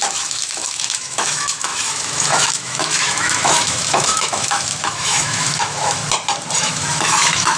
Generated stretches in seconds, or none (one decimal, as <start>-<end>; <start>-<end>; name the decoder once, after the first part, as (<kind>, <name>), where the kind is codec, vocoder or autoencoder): 0.0-6.0 (autoencoder, DAC-VAE); 6.6-7.6